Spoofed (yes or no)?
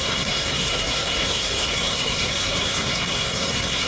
yes